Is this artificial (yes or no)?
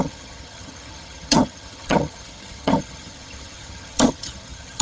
yes